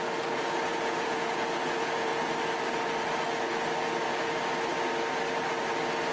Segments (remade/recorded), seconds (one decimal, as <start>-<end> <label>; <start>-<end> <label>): 0.0-2.1 remade; 2.1-6.1 recorded